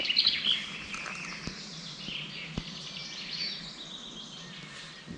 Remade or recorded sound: recorded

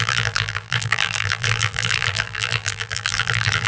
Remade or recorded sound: remade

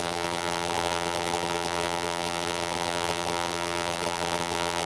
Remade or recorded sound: remade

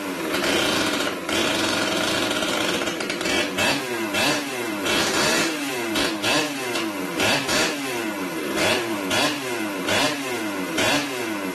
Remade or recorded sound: remade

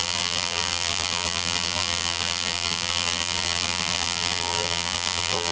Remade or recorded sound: remade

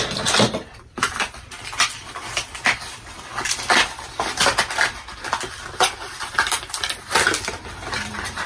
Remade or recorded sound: remade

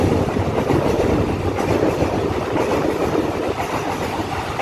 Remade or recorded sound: recorded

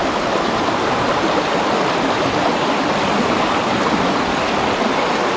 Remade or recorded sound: recorded